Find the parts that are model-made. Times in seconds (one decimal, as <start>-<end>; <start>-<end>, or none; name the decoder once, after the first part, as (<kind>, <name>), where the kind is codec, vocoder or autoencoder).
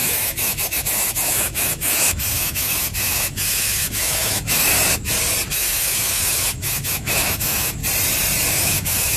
0.0-4.7 (autoencoder, DAC-VAE); 5.5-7.8; 8.5-9.2